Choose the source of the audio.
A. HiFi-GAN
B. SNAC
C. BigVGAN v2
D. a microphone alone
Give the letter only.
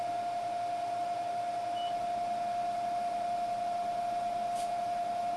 D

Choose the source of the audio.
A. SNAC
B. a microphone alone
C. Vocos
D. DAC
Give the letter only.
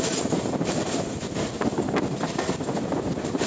B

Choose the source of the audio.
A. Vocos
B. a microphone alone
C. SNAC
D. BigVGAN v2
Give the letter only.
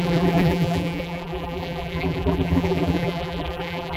D